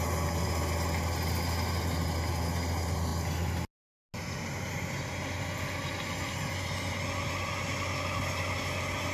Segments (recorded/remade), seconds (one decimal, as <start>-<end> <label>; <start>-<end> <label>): 0.0-9.1 recorded